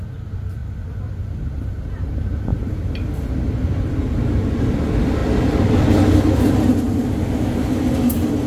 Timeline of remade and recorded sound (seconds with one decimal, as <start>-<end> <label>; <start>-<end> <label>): 0.0-8.5 recorded